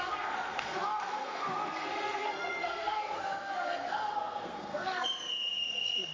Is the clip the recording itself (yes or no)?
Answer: no